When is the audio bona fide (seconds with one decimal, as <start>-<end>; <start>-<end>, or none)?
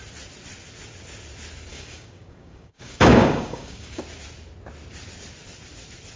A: 0.0-1.7; 4.0-6.2